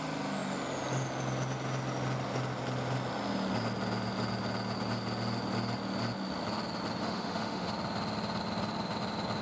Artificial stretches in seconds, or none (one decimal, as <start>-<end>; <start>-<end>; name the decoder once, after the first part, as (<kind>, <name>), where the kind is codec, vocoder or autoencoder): 7.0-7.7 (autoencoder, DAC-VAE)